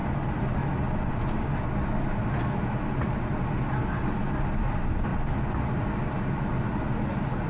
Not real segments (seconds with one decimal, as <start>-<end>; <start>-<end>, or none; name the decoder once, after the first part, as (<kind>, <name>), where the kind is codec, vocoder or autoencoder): none